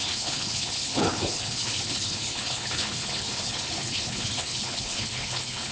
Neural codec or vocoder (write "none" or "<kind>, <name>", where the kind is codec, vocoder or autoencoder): codec, HILCodec